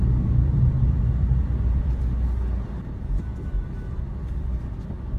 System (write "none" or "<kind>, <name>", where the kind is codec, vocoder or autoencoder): none